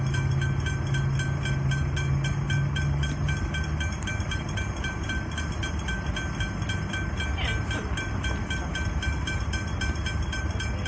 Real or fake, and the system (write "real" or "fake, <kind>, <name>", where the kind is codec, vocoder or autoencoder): real